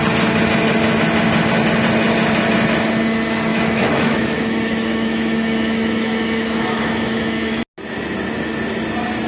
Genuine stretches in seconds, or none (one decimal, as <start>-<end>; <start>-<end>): 0.0-3.5; 7.6-9.3